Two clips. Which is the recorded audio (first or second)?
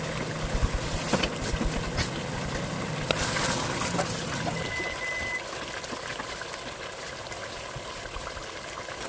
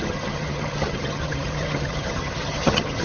first